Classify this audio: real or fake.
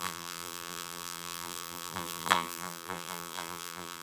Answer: fake